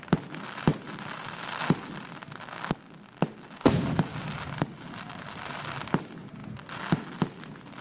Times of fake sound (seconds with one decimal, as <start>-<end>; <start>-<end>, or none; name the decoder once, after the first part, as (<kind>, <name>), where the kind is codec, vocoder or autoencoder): none

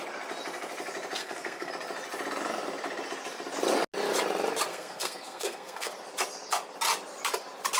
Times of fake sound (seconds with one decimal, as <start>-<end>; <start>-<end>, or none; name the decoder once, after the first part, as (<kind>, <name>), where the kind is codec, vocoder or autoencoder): 1.2-1.7 (codec, SNAC); 4.7-5.9